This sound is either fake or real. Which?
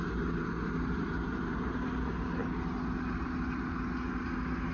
real